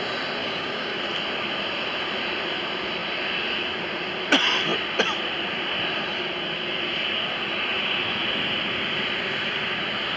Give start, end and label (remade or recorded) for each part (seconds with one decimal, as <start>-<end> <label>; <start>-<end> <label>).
0.0-0.4 recorded; 0.4-1.0 remade; 1.0-10.2 recorded